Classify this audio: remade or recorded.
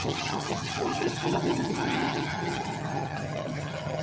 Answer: remade